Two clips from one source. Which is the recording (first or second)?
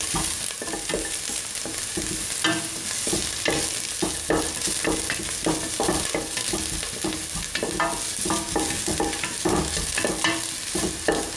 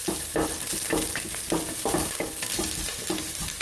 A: first